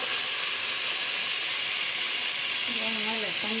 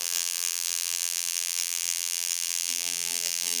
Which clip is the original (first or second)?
first